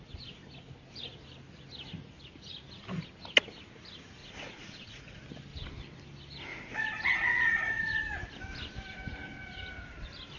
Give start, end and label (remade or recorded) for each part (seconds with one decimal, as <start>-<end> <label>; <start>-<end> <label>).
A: 0.0-4.2 recorded; 4.2-5.2 remade; 5.2-6.5 recorded; 6.5-8.1 remade; 8.1-10.4 recorded